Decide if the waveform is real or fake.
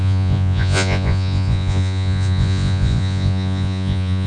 fake